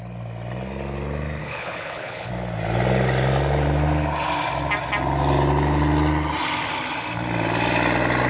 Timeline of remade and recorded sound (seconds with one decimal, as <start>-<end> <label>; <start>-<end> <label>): 0.0-1.4 recorded; 1.4-2.3 remade; 2.3-8.3 recorded